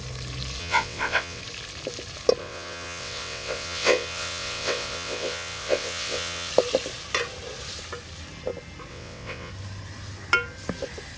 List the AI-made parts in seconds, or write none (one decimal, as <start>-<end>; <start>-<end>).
0.6-1.4; 2.4-6.5; 8.9-9.5